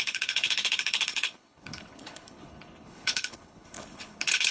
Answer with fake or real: fake